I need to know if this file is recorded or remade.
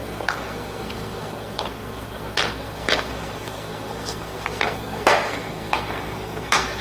remade